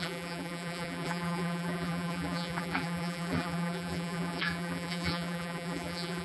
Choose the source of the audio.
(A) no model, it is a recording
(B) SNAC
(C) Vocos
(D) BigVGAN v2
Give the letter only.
D